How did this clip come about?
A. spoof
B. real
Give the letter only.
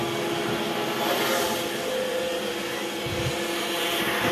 B